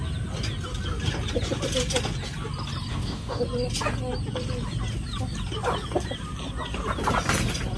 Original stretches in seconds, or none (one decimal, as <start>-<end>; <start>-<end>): 0.0-2.9; 3.4-7.8